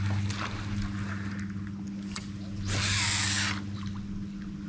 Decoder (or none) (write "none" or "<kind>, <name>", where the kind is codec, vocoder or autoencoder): none